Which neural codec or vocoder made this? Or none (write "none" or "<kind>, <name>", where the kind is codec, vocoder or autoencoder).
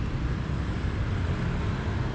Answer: none